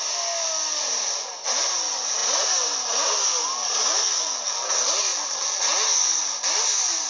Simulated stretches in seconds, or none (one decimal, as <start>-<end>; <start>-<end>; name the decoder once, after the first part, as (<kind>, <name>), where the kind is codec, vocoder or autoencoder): 2.2-2.9 (vocoder, BigVGAN v2)